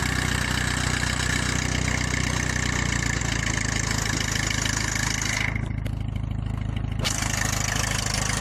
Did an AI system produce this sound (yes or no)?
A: no